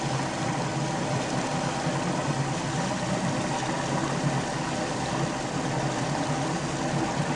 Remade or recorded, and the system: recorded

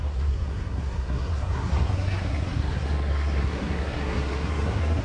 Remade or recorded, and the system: remade, codec, SNAC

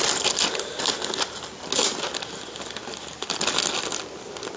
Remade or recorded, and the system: recorded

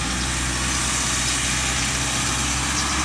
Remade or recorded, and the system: recorded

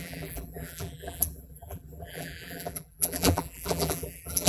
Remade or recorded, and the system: remade, vocoder, BigVGAN v2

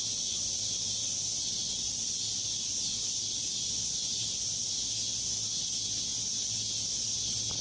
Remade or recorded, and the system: recorded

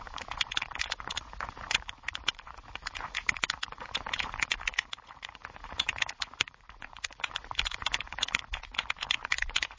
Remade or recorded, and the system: remade, vocoder, Vocos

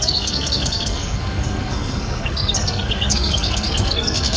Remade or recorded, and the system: remade, codec, SNAC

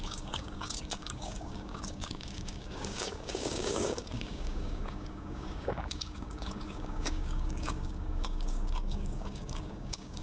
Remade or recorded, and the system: remade, codec, DAC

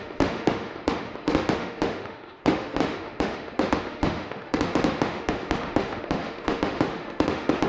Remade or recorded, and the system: remade, autoencoder, DAC-VAE